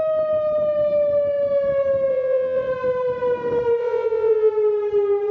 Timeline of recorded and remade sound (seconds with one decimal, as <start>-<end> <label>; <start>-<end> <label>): 0.0-2.1 recorded; 2.1-2.7 remade; 2.7-3.8 recorded; 3.8-4.5 remade; 4.5-5.3 recorded